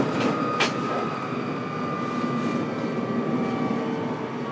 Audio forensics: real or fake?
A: real